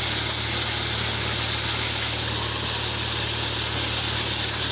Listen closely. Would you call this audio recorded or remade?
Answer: recorded